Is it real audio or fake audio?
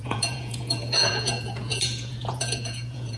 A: fake